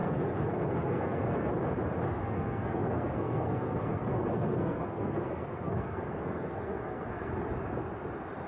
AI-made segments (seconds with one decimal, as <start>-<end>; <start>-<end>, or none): 0.0-1.5; 2.2-7.3